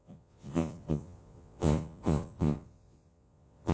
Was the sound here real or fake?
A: fake